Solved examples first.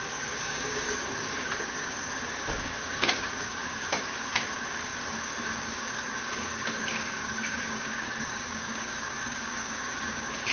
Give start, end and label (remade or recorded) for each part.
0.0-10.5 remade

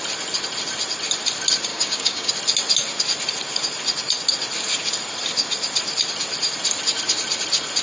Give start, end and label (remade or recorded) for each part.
0.0-1.7 recorded; 1.7-2.3 remade; 2.3-7.8 recorded

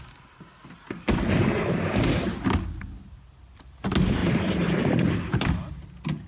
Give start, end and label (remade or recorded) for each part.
0.0-6.3 recorded

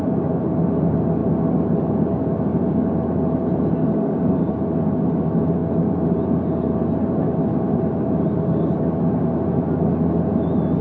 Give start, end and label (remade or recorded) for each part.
0.0-3.8 recorded; 3.8-4.5 remade; 4.5-10.8 recorded

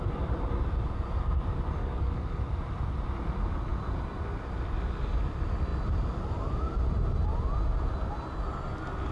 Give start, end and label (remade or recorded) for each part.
0.0-1.8 recorded; 1.8-2.4 remade; 2.4-9.1 recorded

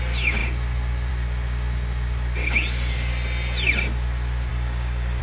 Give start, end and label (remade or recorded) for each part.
0.0-2.4 recorded; 2.4-3.1 remade; 3.1-4.5 recorded; 4.5-5.2 remade

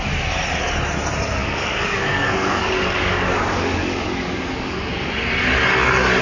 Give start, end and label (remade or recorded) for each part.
0.0-1.4 recorded; 1.4-5.1 remade; 5.1-6.2 recorded